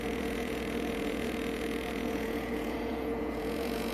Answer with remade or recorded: remade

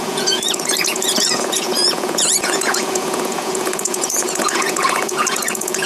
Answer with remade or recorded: remade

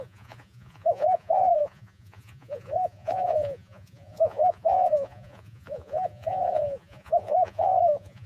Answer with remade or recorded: remade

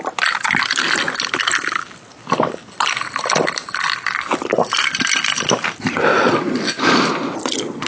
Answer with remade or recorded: recorded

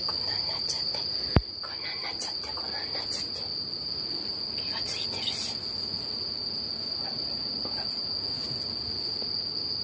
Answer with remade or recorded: recorded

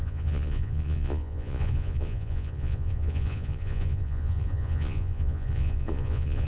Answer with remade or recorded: remade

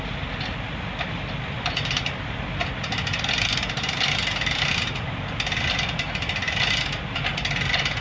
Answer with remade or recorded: recorded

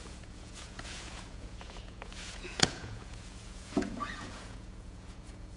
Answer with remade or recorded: remade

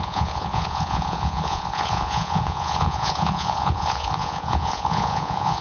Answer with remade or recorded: remade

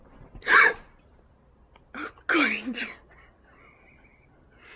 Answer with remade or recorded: recorded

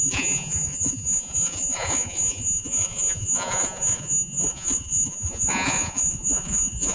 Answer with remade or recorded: remade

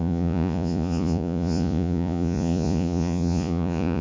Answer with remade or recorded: remade